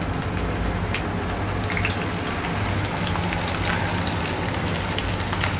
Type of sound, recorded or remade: recorded